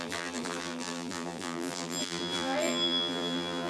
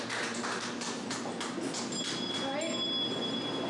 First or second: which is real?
second